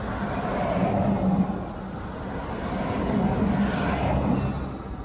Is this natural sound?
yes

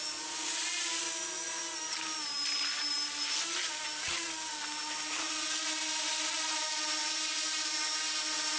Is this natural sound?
yes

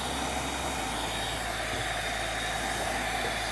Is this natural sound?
yes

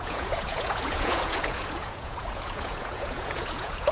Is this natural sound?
no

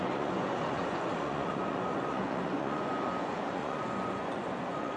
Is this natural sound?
no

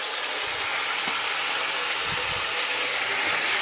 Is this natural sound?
yes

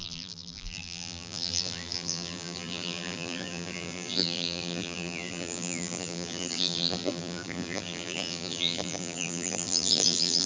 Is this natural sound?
no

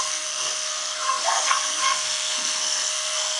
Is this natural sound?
no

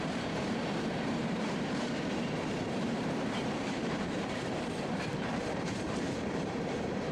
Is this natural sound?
no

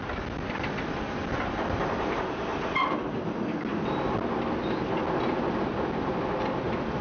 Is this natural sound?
yes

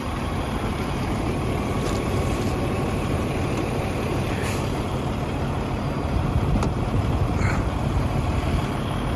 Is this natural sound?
no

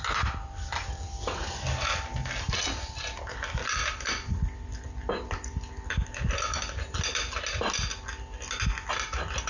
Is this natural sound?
yes